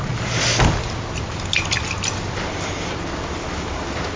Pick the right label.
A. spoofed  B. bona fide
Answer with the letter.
B